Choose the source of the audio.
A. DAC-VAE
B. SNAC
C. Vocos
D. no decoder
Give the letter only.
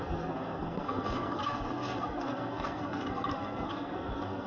B